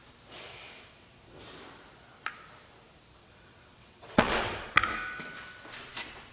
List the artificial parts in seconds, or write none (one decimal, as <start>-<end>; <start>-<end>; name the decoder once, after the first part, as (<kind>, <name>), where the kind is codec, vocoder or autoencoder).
0.5-1.5 (vocoder, WaveNeXt); 3.2-4.7